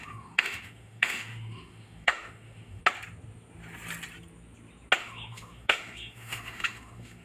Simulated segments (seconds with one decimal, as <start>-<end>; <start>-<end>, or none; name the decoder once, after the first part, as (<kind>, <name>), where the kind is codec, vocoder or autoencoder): 0.0-2.8 (autoencoder, DAC-VAE); 5.0-7.2